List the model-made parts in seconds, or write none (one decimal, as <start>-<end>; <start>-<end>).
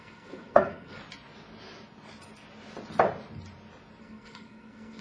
0.0-1.0; 4.0-5.0